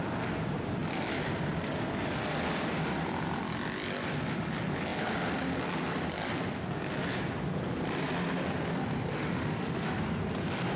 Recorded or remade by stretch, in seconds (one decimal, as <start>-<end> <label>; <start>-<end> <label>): 0.0-9.1 recorded; 9.1-10.0 remade; 10.0-10.8 recorded